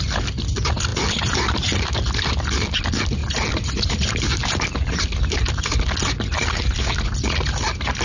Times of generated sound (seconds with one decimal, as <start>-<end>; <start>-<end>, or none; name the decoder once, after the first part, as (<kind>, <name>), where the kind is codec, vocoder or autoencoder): 0.9-2.3 (vocoder, BigVGAN v2); 3.2-5.5; 6.0-6.7